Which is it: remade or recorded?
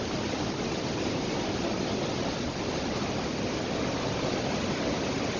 recorded